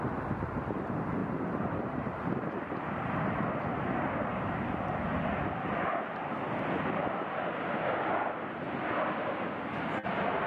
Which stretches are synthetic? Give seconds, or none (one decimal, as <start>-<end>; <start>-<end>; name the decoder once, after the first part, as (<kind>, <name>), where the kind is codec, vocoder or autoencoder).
1.2-2.8 (vocoder, BigVGAN v2)